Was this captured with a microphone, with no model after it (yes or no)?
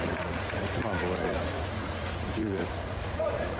no